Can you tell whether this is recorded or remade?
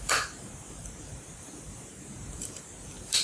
remade